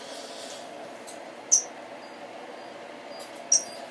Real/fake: real